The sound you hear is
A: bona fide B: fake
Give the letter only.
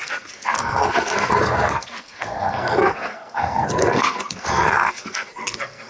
B